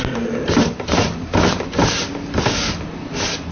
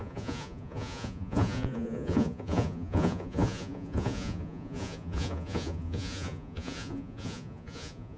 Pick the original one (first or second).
first